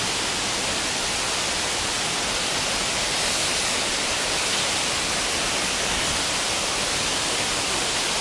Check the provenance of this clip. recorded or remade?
recorded